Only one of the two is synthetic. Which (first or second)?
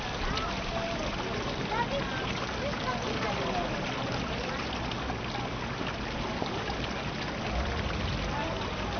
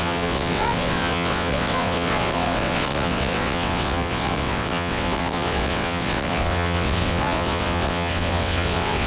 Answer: second